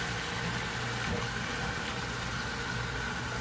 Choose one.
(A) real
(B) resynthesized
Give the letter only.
A